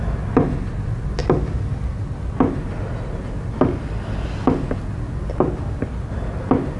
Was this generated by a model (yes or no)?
no